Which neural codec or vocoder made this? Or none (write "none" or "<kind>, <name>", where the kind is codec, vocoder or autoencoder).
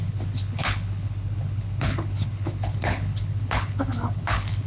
codec, HILCodec